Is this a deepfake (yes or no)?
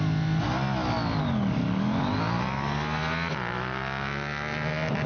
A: no